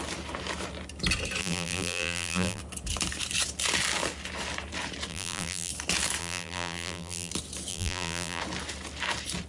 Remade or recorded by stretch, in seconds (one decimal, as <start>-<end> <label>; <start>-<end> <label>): 0.0-1.4 recorded; 1.4-2.6 remade; 2.6-5.1 recorded; 5.1-5.7 remade; 5.7-6.2 recorded; 6.2-7.3 remade; 7.3-7.7 recorded; 7.7-8.4 remade; 8.4-9.5 recorded